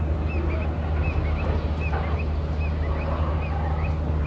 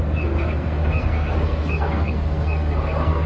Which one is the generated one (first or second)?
second